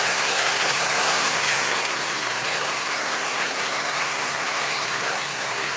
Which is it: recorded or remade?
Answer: remade